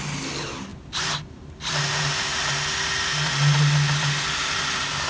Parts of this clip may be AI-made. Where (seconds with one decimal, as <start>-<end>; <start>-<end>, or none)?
none